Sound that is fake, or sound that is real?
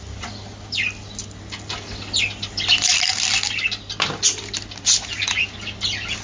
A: real